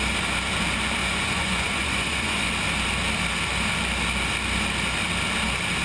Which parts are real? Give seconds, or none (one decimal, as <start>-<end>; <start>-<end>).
0.0-1.0; 2.5-5.8